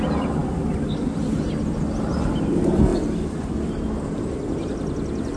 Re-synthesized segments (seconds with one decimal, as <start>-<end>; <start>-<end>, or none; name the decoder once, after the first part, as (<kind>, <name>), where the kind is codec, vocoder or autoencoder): none